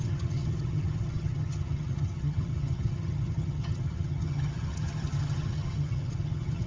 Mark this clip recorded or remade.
remade